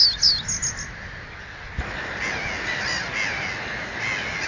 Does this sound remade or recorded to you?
recorded